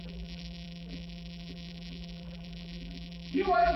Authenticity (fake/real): fake